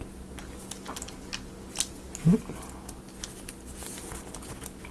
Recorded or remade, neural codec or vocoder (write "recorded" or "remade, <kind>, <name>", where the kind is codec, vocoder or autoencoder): recorded